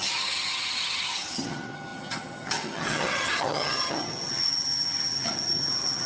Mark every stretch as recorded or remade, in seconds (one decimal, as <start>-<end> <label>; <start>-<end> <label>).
0.0-6.1 remade